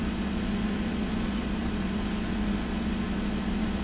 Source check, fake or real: fake